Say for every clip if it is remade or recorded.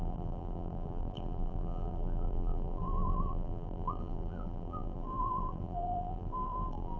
remade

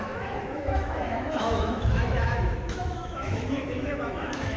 remade